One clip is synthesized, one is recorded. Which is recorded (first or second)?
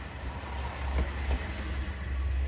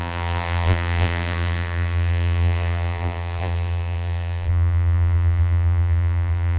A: first